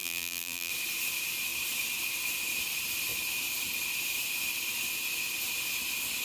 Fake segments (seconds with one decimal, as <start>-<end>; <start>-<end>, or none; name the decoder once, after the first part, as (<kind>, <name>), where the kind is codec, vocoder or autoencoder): 0.0-0.7 (vocoder, BigVGAN v2)